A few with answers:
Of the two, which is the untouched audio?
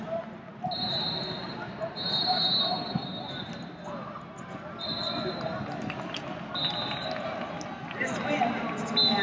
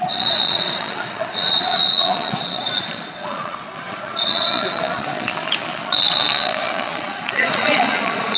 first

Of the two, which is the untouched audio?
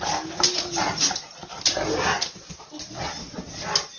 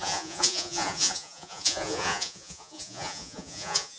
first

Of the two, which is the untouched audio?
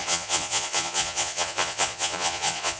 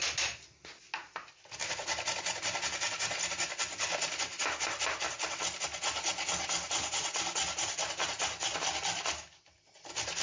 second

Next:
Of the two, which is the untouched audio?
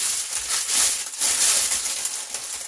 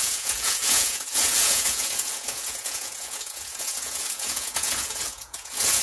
first